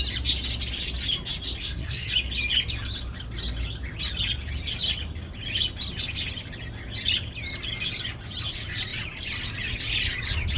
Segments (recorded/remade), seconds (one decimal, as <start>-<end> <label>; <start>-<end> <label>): 0.0-1.6 recorded; 1.6-2.1 remade; 2.1-10.6 recorded